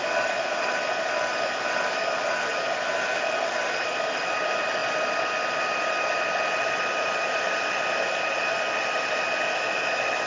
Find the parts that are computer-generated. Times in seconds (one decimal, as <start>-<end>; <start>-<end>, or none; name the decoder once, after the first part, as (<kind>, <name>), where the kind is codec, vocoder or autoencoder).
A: none